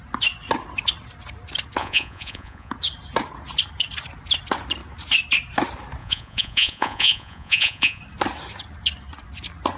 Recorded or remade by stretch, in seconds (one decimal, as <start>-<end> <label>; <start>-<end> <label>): 0.0-1.8 recorded; 1.8-2.7 remade; 2.7-6.0 recorded; 6.0-8.0 remade; 8.0-9.8 recorded

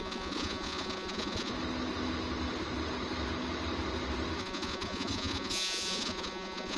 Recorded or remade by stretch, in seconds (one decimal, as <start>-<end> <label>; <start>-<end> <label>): 0.0-1.5 remade; 1.5-4.4 recorded; 4.4-6.8 remade

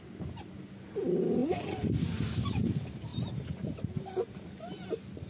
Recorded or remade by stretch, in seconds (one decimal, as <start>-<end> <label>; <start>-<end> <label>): 0.0-5.3 recorded

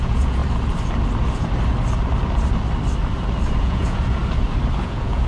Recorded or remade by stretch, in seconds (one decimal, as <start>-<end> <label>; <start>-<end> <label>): 0.0-0.4 remade; 0.4-3.6 recorded; 3.6-4.2 remade; 4.2-4.8 recorded; 4.8-5.3 remade

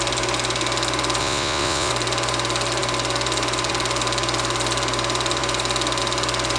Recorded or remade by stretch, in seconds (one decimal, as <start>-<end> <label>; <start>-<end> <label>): 0.0-1.2 recorded; 1.2-1.9 remade; 1.9-6.6 recorded

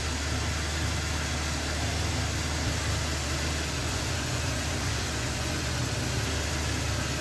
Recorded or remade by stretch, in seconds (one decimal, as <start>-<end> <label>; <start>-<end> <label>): 0.0-3.8 recorded; 3.8-5.8 remade; 5.8-7.2 recorded

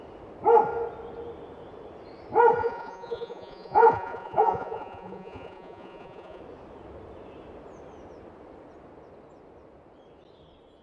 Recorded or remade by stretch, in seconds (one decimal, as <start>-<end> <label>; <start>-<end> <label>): 0.0-2.6 recorded; 2.6-6.4 remade; 6.4-10.8 recorded

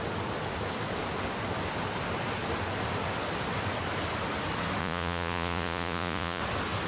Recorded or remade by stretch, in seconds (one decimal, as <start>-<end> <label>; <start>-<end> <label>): 0.0-4.8 recorded; 4.8-6.4 remade; 6.4-6.9 recorded